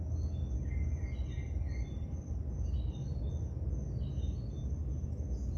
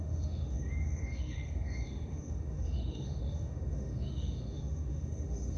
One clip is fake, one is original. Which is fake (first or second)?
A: second